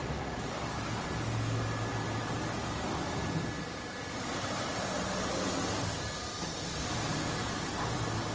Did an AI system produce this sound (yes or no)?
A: no